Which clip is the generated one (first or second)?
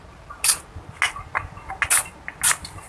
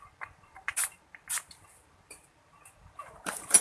second